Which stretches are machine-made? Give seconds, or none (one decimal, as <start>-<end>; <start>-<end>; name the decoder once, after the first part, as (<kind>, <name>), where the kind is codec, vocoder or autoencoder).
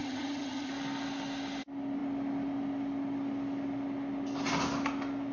0.0-0.7 (vocoder, HiFi-GAN)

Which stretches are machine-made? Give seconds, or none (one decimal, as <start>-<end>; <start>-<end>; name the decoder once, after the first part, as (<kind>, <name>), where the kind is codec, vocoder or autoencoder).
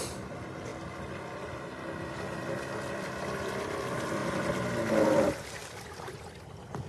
none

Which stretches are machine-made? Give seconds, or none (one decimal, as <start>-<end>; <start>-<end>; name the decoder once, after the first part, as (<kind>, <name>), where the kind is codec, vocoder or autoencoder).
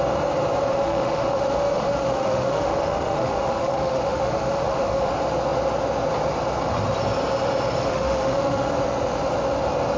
0.7-5.1 (autoencoder, DAC-VAE); 7.9-8.7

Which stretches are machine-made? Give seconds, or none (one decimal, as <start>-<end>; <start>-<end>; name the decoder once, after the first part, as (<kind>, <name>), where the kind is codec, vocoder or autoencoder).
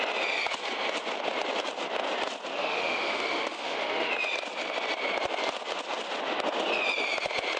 2.6-4.1 (autoencoder, DAC-VAE)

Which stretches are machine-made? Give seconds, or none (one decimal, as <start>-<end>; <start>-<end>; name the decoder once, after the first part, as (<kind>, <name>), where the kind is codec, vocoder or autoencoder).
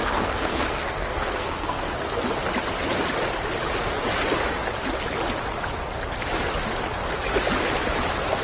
0.0-2.2 (codec, SNAC)